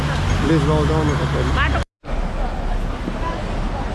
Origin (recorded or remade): recorded